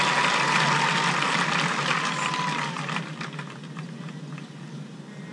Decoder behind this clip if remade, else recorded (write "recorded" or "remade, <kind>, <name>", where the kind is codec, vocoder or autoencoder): recorded